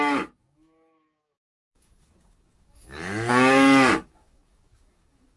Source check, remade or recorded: remade